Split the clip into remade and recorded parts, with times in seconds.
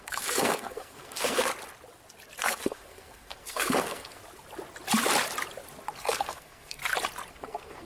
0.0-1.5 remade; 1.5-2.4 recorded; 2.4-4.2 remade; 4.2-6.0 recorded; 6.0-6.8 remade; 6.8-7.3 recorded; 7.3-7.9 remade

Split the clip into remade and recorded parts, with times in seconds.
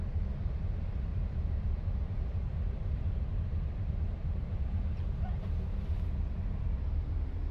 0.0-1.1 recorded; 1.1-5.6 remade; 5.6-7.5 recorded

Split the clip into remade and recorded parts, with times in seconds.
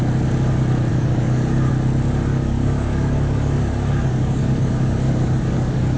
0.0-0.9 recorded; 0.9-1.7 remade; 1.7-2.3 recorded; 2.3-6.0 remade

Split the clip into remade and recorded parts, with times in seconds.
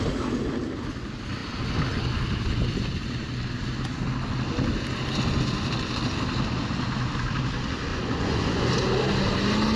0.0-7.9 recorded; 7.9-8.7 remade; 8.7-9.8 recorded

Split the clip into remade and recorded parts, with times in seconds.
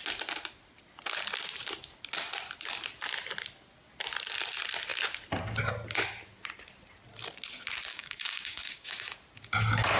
0.0-7.9 recorded; 7.9-8.9 remade; 8.9-10.0 recorded